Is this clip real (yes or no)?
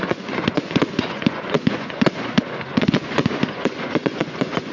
no